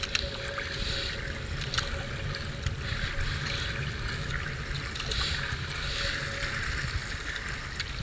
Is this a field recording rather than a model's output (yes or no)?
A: yes